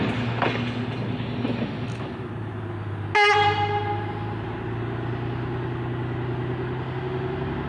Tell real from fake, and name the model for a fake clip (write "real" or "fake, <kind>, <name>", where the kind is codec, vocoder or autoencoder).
real